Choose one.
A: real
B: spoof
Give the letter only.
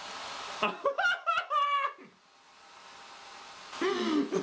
A